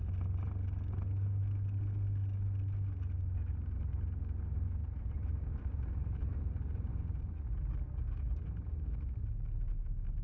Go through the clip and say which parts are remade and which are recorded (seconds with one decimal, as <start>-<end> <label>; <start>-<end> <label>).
0.0-4.8 recorded; 4.8-6.9 remade; 6.9-10.2 recorded